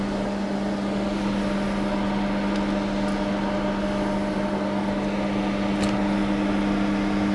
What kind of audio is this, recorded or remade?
recorded